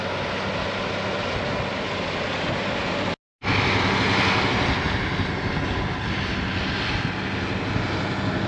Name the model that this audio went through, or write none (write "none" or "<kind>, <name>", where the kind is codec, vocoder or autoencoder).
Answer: none